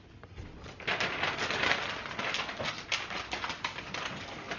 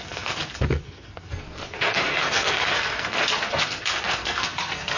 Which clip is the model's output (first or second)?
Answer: second